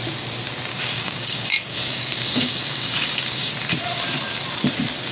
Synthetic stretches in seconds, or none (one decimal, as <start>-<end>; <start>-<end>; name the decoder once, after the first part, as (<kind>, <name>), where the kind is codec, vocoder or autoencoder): 0.7-3.5 (codec, DAC)